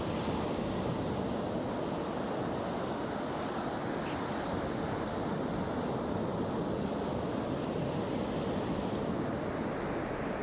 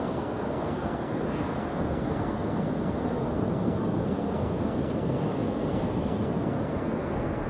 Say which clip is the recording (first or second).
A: first